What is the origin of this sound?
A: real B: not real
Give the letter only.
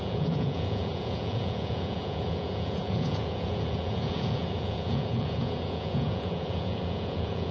B